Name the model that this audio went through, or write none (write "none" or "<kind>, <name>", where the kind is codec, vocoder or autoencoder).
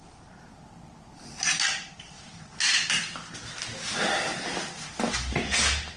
none